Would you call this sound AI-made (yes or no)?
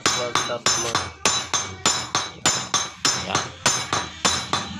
no